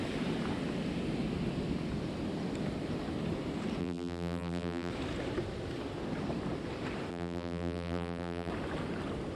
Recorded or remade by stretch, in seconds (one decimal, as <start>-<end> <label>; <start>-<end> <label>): 0.0-3.8 recorded; 3.8-4.9 remade; 4.9-7.1 recorded; 7.1-8.5 remade; 8.5-9.4 recorded